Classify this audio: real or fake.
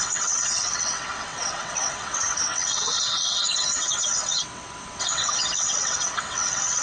fake